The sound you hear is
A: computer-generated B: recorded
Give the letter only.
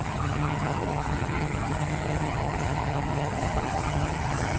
A